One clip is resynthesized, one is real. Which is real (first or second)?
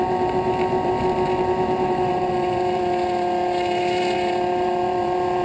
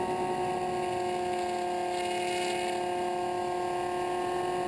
second